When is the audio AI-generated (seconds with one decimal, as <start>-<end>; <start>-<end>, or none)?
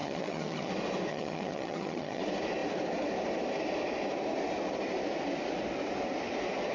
0.0-0.7; 1.1-2.2